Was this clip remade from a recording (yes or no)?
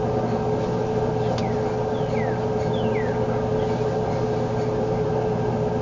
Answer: no